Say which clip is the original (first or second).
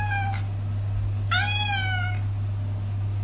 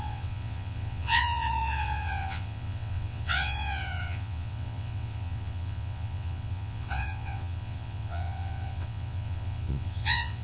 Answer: first